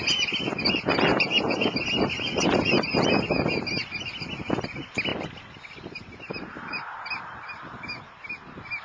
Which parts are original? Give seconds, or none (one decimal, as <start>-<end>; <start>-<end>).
0.0-8.8